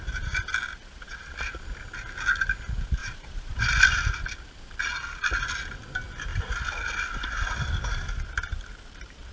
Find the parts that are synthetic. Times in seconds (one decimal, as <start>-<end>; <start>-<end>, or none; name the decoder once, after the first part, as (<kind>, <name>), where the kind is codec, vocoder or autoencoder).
0.7-1.2 (vocoder, Vocos); 3.0-3.6